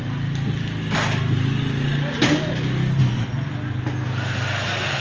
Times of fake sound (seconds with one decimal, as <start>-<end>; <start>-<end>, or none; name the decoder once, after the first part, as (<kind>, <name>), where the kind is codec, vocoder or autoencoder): none